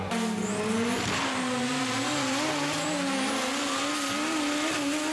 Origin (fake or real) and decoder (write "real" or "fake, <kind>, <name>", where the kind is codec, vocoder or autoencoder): real